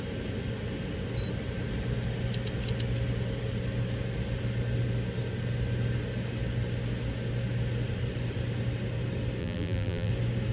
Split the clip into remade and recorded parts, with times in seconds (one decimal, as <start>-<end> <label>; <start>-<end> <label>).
0.0-9.4 recorded; 9.4-10.1 remade; 10.1-10.5 recorded